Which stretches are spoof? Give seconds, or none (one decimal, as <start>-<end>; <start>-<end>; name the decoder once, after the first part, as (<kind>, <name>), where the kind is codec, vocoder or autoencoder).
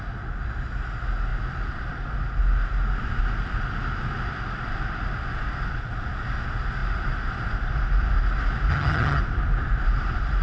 8.7-9.2 (vocoder, HiFi-GAN)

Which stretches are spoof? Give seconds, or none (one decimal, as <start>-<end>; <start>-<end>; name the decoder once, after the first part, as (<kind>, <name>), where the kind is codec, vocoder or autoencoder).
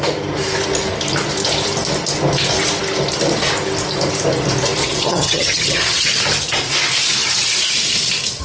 4.8-6.1 (vocoder, HiFi-GAN)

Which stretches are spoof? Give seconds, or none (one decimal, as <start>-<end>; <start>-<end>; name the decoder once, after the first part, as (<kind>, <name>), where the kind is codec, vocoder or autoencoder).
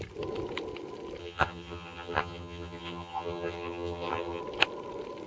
1.2-4.4 (vocoder, HiFi-GAN)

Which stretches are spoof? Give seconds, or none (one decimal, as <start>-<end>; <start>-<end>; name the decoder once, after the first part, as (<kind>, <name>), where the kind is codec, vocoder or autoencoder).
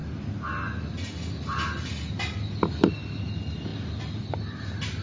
none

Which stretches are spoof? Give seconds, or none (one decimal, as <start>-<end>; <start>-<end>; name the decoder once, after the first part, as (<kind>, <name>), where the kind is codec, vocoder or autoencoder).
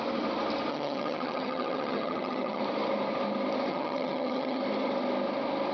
0.7-2.6 (vocoder, HiFi-GAN); 3.7-4.6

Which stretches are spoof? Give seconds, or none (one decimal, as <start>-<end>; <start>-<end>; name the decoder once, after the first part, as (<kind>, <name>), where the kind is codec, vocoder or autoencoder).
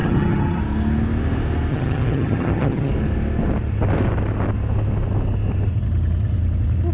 0.0-0.6 (vocoder, HiFi-GAN); 1.7-2.9